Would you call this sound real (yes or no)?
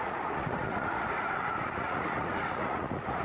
no